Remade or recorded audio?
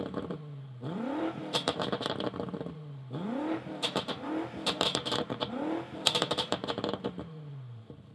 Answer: remade